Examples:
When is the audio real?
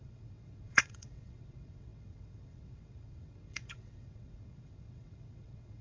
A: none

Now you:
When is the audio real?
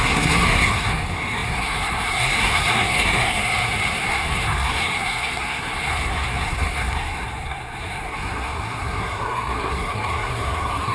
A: none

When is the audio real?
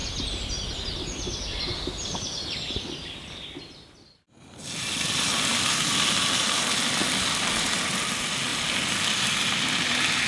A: 0.0-10.3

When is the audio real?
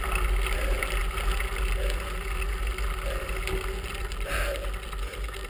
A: 0.0-5.5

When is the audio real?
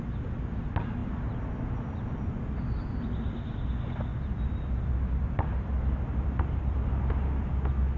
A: 0.0-4.1; 7.1-8.0